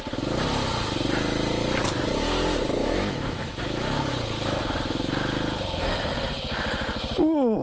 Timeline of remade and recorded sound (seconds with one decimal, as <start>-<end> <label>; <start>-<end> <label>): 0.0-2.8 recorded; 2.8-4.1 remade; 4.1-7.6 recorded